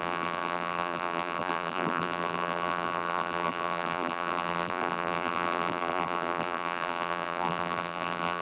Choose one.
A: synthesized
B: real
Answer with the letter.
A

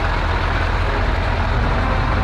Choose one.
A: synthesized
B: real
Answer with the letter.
B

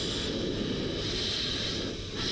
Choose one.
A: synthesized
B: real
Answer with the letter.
B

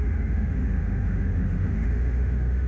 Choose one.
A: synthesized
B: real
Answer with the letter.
A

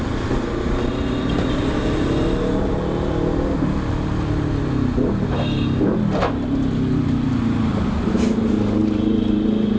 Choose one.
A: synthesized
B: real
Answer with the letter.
B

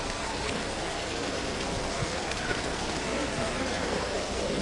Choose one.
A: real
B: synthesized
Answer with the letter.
B